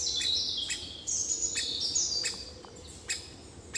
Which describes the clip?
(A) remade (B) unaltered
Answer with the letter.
B